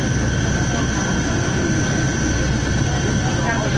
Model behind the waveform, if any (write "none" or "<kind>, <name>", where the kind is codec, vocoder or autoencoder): none